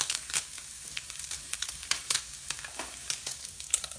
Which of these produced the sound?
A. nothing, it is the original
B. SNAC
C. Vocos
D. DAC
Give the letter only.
D